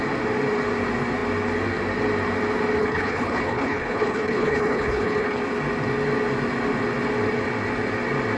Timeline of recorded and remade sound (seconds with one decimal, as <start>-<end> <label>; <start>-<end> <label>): 0.0-2.8 recorded; 2.8-5.4 remade; 5.4-8.4 recorded